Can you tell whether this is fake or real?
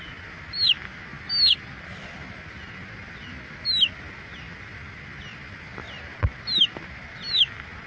real